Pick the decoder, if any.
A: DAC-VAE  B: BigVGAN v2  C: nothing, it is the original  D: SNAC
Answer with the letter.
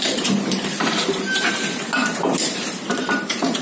B